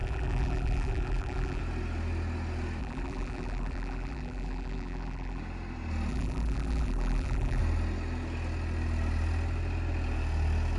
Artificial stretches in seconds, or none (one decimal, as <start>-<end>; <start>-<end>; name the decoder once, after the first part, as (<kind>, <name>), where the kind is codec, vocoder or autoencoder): 0.0-1.6 (vocoder, BigVGAN v2); 2.8-5.4; 6.1-7.6

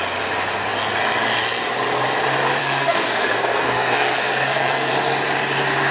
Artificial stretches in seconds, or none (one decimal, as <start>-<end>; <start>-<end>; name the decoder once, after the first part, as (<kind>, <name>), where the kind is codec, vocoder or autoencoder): 2.6-4.9 (codec, SNAC)

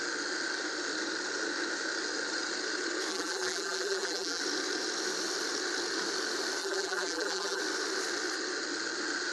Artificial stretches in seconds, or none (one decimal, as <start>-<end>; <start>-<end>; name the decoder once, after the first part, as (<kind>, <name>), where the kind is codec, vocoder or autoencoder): 3.1-4.4 (vocoder, BigVGAN v2); 6.6-7.6